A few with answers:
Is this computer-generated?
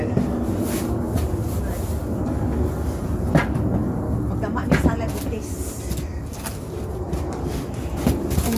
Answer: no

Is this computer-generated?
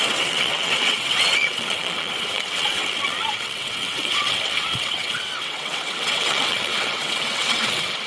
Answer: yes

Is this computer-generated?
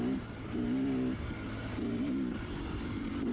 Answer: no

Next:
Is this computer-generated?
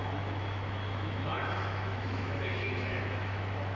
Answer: yes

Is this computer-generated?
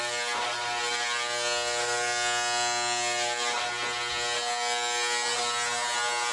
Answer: no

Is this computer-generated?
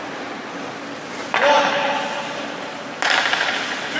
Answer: no